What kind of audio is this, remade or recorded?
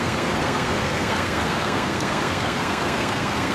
remade